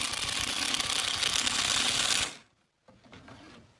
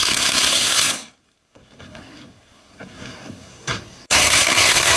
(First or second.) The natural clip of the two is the first